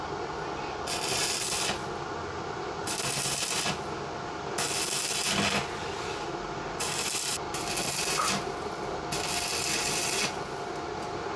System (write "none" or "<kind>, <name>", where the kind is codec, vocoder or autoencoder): none